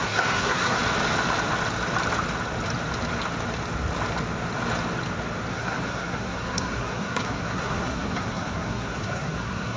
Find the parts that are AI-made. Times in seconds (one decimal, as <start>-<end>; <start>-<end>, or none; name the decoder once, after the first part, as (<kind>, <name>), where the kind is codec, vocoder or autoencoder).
0.0-0.8 (codec, SNAC); 5.5-9.8